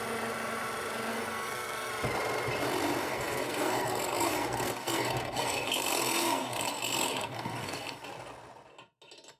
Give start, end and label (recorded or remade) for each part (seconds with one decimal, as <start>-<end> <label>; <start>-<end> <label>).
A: 0.0-1.1 recorded; 1.1-1.9 remade; 1.9-3.0 recorded; 3.0-8.0 remade; 8.0-9.4 recorded